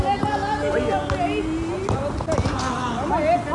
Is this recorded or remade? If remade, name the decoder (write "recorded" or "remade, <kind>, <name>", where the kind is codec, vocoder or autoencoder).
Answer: recorded